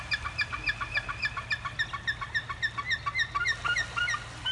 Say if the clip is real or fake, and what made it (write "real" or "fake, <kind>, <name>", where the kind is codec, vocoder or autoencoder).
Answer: real